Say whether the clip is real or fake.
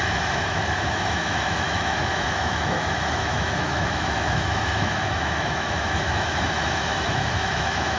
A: fake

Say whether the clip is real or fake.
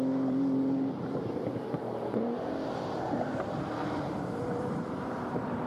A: fake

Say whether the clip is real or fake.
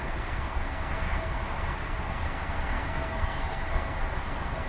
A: fake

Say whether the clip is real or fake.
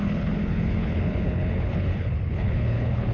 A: fake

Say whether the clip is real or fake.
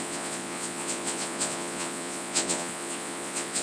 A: fake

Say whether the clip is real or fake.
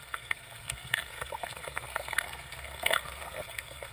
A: fake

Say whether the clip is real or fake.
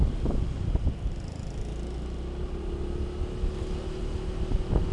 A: real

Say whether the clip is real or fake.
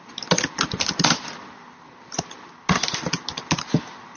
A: real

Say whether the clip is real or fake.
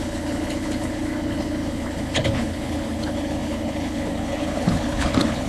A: fake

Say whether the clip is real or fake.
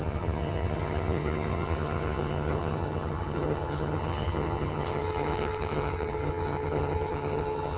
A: fake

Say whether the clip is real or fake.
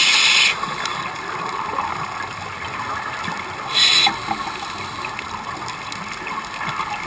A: real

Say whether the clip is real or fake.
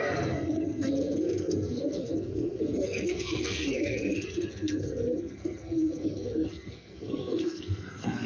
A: fake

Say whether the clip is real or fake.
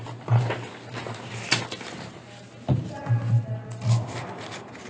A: real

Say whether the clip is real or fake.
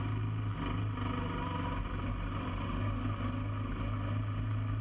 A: real